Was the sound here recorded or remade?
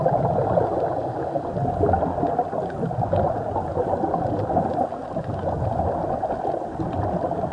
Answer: recorded